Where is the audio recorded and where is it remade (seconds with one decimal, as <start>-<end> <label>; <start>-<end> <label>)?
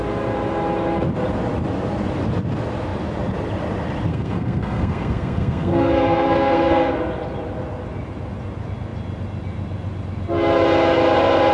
0.0-4.1 recorded; 4.1-6.9 remade; 6.9-11.5 recorded